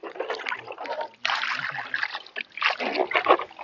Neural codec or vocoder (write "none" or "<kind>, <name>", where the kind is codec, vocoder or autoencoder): none